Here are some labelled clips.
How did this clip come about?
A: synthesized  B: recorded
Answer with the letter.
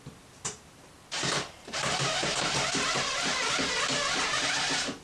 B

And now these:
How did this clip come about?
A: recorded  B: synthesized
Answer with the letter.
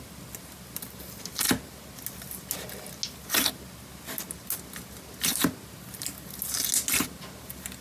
A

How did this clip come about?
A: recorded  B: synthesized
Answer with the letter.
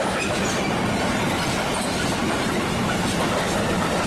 A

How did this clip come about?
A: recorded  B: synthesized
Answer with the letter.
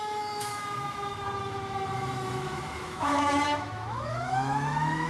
B